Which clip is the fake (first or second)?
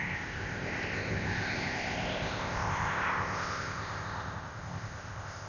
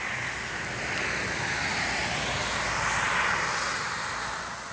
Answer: first